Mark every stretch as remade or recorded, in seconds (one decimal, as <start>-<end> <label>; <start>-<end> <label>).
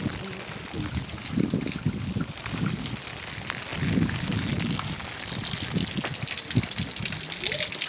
0.0-7.9 recorded